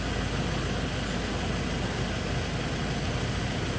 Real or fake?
real